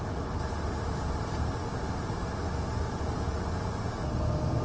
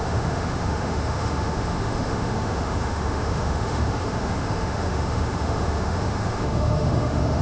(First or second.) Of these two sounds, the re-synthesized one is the second